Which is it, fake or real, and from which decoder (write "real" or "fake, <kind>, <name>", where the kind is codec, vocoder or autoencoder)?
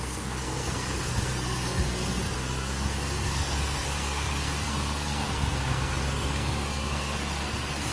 fake, codec, SNAC